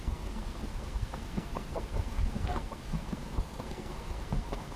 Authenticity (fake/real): fake